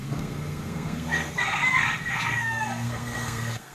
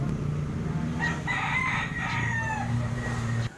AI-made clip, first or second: first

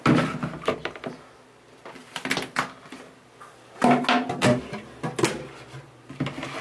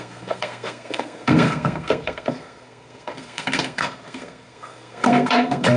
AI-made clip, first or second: second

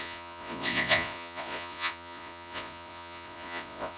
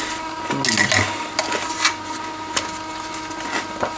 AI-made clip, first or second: first